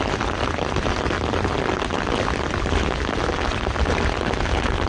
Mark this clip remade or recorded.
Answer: recorded